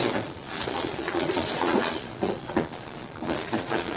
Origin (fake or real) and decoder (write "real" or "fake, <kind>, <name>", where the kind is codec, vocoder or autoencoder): fake, vocoder, Vocos